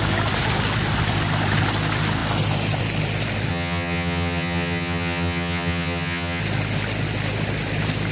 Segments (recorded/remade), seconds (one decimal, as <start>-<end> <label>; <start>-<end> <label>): 0.0-3.5 recorded; 3.5-6.4 remade; 6.4-8.1 recorded